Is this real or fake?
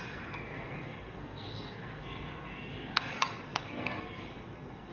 fake